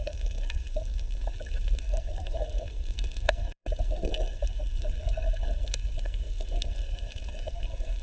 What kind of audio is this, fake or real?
fake